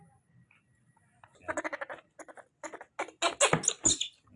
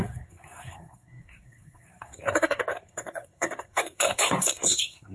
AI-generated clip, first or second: second